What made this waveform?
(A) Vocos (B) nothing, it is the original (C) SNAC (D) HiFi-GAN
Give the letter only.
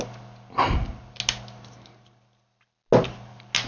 B